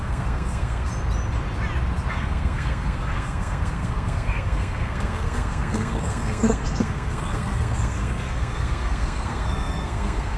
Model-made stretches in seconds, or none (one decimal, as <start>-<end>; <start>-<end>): 0.0-0.9; 2.1-10.4